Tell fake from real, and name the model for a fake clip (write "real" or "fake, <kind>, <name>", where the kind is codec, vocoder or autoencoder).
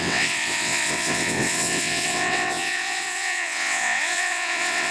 fake, vocoder, WaveNeXt